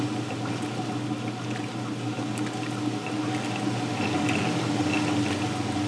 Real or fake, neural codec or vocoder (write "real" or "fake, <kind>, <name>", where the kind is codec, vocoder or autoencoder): real